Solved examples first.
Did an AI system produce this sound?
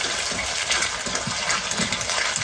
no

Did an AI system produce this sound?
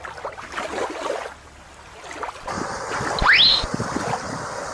no